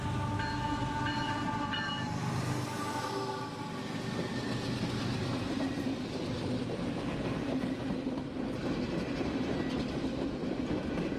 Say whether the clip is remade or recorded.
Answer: recorded